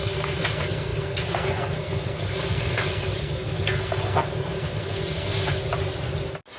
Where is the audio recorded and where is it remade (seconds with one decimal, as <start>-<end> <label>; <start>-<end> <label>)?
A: 0.0-5.6 remade; 5.6-6.6 recorded